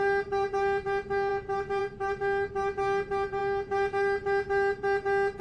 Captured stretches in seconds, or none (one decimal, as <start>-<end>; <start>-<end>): 0.0-5.4